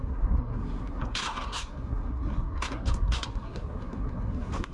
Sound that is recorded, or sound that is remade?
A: remade